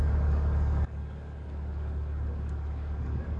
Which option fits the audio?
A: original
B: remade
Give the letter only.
B